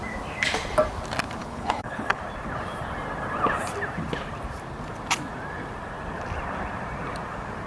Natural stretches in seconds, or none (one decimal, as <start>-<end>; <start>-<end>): 0.0-1.4; 2.2-7.7